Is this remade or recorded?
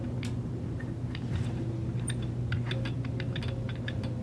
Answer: recorded